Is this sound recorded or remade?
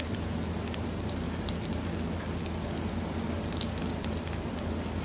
remade